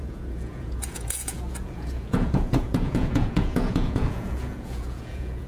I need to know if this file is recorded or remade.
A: remade